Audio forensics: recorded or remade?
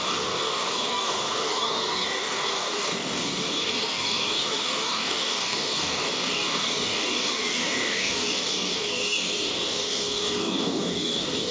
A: remade